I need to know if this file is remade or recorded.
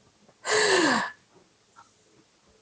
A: recorded